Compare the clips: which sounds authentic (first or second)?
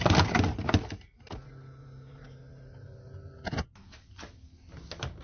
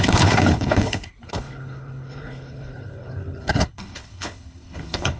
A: first